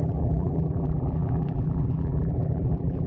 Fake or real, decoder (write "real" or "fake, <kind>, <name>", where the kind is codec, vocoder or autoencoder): fake, vocoder, BigVGAN v2